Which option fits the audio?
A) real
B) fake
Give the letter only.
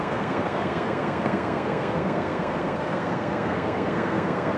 B